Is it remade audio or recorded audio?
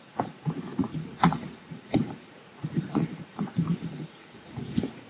remade